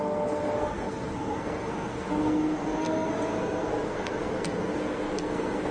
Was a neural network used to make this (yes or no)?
yes